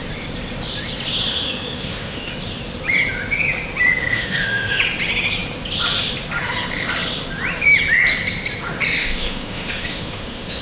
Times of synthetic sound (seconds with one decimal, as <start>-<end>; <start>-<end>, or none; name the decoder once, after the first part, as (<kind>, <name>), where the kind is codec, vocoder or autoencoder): 1.3-2.3 (autoencoder, DAC-VAE); 4.0-4.8; 9.0-10.6